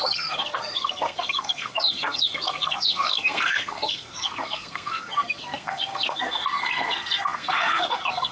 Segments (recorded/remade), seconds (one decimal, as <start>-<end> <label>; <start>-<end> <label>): 0.0-8.3 remade

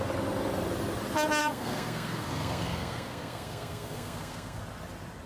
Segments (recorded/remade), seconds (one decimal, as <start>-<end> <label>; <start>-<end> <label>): 0.0-1.4 recorded; 1.4-4.6 remade; 4.6-5.3 recorded

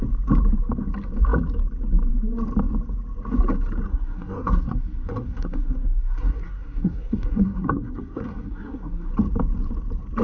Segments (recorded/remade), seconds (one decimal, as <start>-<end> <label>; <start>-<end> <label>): 0.0-3.9 recorded; 3.9-9.1 remade; 9.1-10.2 recorded

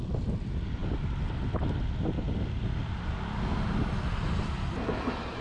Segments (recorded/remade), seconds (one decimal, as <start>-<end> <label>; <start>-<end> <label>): 0.0-5.4 recorded

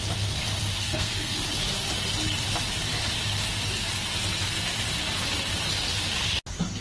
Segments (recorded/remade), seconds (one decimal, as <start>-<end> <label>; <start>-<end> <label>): 0.0-0.8 recorded; 0.8-1.4 remade; 1.4-6.8 recorded

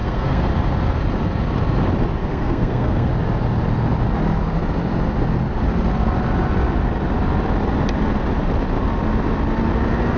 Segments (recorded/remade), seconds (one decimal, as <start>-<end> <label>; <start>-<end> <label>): 0.0-0.5 remade; 0.5-2.2 recorded; 2.2-3.1 remade; 3.1-10.2 recorded

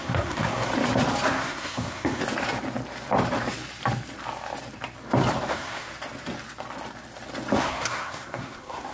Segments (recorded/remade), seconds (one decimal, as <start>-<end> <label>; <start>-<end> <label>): 0.0-0.7 remade; 0.7-1.3 recorded; 1.3-2.2 remade; 2.2-5.5 recorded; 5.5-5.9 remade; 5.9-7.6 recorded; 7.6-8.9 remade